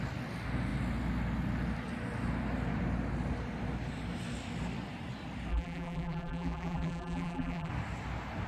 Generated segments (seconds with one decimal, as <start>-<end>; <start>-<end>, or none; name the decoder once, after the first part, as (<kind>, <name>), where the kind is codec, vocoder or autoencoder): 5.5-7.7 (vocoder, BigVGAN v2)